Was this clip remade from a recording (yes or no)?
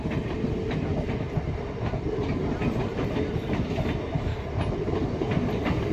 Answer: no